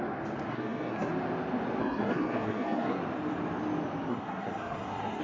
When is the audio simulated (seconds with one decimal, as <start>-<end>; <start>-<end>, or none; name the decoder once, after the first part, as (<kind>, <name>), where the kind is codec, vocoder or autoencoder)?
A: 0.5-1.1 (codec, SNAC); 1.8-3.0; 4.1-5.2